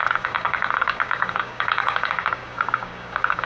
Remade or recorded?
remade